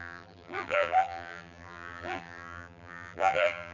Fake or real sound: fake